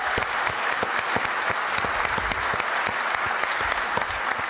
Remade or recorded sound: recorded